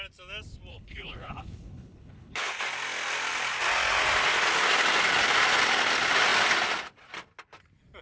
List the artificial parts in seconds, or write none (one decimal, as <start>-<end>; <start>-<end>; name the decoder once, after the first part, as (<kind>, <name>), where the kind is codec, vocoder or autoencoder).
0.7-2.5 (codec, HILCodec)